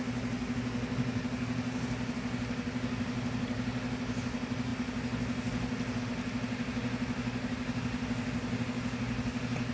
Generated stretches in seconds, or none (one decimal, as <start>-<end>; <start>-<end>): none